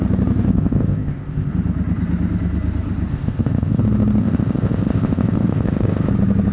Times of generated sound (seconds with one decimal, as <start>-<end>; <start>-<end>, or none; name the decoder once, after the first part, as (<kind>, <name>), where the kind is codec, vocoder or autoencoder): 0.5-1.5 (codec, ZipCodec); 3.1-3.8; 4.2-6.1